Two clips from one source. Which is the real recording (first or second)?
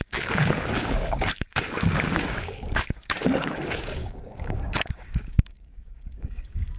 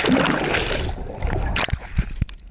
second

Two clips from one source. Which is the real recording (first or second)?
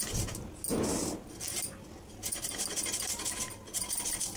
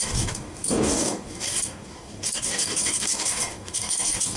first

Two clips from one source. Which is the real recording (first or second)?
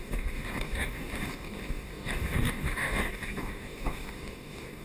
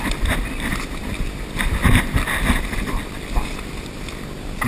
second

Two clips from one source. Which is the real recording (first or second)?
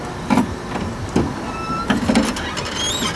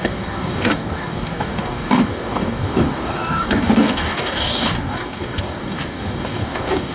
first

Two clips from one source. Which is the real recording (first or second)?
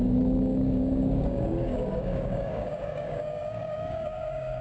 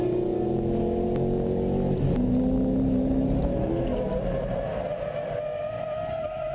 second